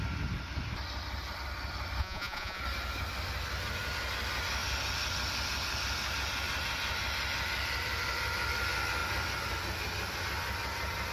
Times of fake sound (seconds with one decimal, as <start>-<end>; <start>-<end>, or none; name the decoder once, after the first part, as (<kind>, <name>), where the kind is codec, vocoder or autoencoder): 2.0-2.6 (vocoder, Vocos)